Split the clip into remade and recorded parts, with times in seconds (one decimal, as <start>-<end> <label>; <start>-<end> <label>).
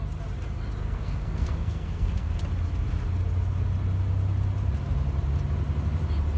0.0-0.8 recorded; 0.8-2.4 remade; 2.4-6.4 recorded